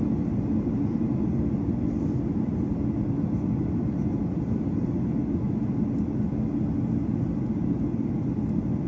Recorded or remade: recorded